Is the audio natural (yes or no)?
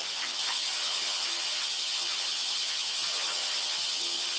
no